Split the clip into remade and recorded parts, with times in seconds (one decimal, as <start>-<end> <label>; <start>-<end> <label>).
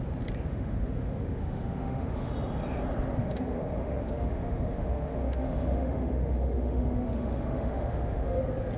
0.0-0.5 recorded; 0.5-2.3 remade; 2.3-3.2 recorded; 3.2-8.4 remade; 8.4-8.8 recorded